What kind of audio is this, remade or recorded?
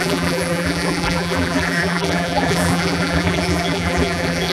remade